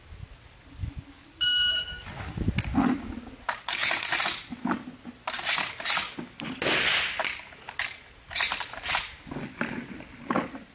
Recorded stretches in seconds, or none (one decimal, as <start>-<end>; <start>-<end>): 0.0-0.8; 2.3-10.7